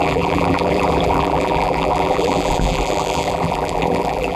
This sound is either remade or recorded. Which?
remade